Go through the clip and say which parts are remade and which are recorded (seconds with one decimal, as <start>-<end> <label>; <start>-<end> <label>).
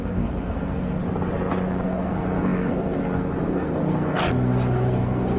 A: 0.0-1.0 remade; 1.0-1.7 recorded; 1.7-5.4 remade